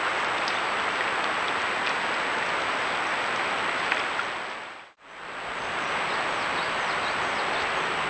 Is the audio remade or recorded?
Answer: recorded